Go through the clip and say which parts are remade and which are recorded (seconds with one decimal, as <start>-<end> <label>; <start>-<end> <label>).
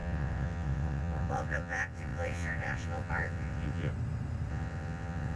0.0-3.9 remade; 3.9-4.5 recorded; 4.5-5.4 remade